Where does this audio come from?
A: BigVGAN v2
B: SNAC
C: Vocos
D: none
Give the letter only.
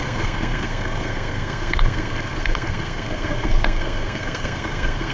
B